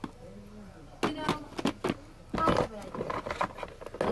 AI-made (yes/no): no